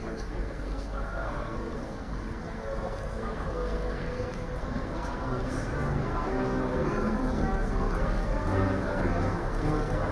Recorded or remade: remade